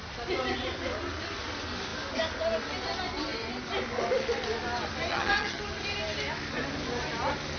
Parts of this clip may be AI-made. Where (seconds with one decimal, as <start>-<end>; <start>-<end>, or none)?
5.1-5.6